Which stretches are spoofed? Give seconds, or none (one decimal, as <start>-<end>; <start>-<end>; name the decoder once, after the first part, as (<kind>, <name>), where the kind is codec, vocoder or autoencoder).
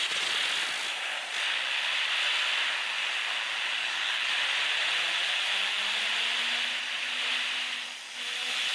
3.8-4.3 (codec, DAC)